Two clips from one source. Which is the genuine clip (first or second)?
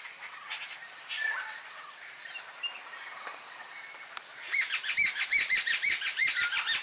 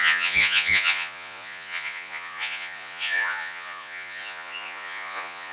first